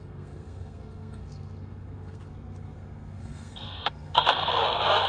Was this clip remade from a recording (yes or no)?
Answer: yes